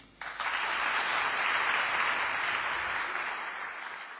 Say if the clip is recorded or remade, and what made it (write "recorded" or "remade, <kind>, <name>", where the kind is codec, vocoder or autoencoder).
recorded